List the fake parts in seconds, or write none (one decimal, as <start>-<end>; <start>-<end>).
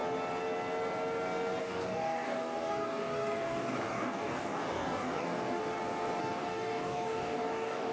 1.6-5.6; 6.2-7.9